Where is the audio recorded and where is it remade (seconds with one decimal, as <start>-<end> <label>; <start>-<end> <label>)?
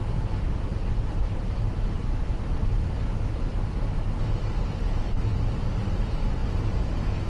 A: 0.0-2.7 remade; 2.7-5.0 recorded; 5.0-6.4 remade; 6.4-7.3 recorded